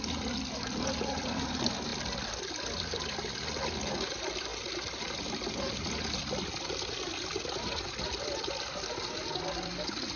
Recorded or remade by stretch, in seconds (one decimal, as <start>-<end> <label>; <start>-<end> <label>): 0.0-10.2 recorded